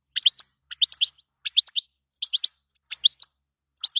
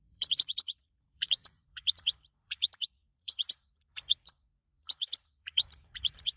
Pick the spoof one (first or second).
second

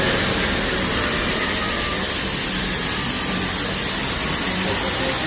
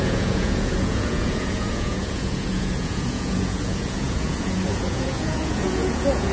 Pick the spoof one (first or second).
second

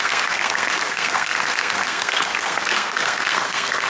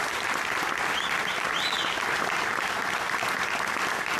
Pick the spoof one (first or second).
first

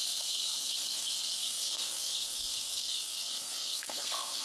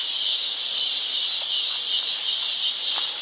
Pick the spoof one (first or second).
first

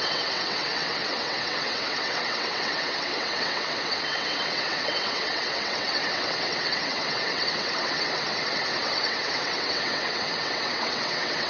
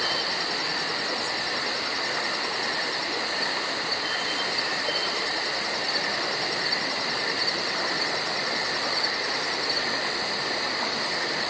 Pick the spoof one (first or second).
first